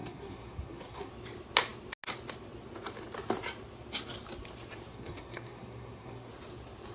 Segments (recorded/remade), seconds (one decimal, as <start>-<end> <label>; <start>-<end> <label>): 0.0-1.1 remade; 1.1-4.9 recorded; 4.9-6.3 remade; 6.3-6.9 recorded